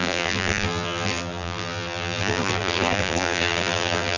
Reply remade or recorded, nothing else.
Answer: remade